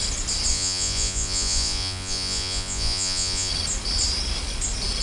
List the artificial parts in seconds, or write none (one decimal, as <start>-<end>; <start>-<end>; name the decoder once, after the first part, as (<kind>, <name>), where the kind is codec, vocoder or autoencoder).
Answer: 0.5-3.5 (vocoder, Vocos)